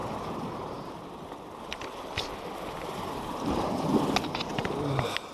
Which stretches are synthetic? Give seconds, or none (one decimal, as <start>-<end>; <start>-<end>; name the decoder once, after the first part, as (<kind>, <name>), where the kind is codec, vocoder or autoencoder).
none